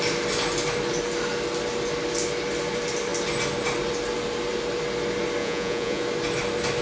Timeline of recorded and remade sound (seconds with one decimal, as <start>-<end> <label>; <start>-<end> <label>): 0.0-5.4 recorded; 5.4-6.0 remade; 6.0-6.8 recorded